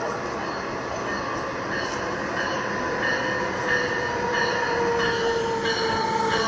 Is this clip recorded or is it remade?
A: recorded